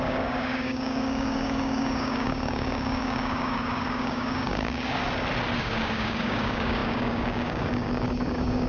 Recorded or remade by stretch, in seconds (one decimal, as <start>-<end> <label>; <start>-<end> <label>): 0.0-5.0 remade; 5.0-5.6 recorded; 5.6-8.7 remade

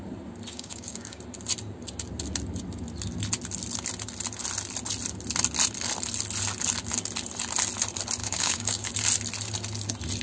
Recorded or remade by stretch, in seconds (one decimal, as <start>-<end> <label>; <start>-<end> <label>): 0.0-0.5 recorded; 0.5-1.2 remade; 1.2-8.2 recorded; 8.2-8.9 remade; 8.9-10.2 recorded

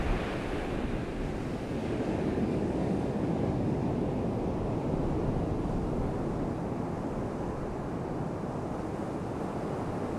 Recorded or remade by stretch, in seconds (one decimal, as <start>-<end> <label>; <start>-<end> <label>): 0.0-1.8 recorded; 1.8-3.9 remade; 3.9-10.2 recorded

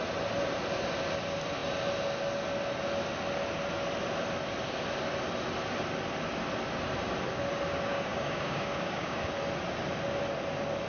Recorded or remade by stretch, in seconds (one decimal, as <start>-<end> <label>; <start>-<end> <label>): 0.0-7.9 recorded; 7.9-9.3 remade; 9.3-10.9 recorded

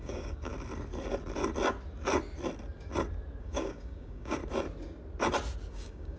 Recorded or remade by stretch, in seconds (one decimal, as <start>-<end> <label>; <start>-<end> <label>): 0.0-0.5 remade; 0.5-3.4 recorded; 3.4-4.4 remade; 4.4-5.7 recorded; 5.7-6.2 remade

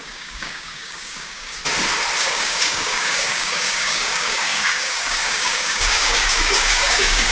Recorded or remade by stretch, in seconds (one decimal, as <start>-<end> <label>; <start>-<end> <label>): 0.0-1.6 remade; 1.6-2.2 recorded; 2.2-7.3 remade

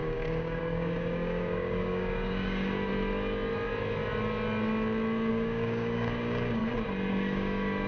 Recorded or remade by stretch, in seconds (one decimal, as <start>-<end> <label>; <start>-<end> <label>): 0.0-2.9 remade; 2.9-5.3 recorded; 5.3-6.6 remade; 6.6-7.1 recorded; 7.1-7.9 remade